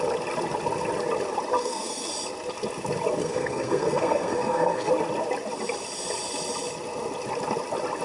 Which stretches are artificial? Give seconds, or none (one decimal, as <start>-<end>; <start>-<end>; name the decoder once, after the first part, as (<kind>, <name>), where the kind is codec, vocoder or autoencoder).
1.6-2.1 (codec, SNAC); 3.2-4.9